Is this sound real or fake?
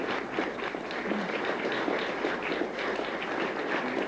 real